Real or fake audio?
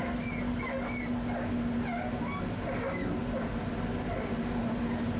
real